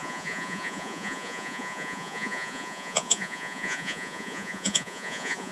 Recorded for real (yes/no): no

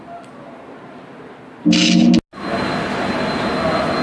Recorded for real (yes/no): yes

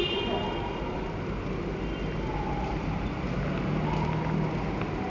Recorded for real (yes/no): yes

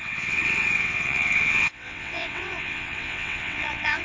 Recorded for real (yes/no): no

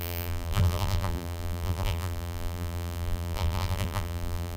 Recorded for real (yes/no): no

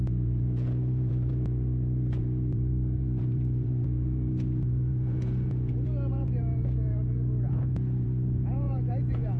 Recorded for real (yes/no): no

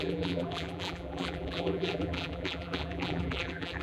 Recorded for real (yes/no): no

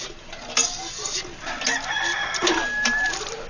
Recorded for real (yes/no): yes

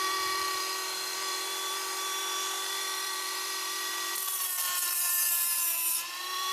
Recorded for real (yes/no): no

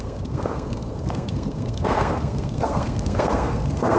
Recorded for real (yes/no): no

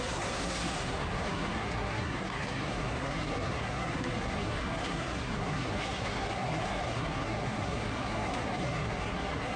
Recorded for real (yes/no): no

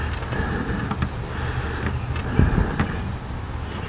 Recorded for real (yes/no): yes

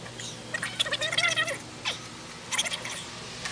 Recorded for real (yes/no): yes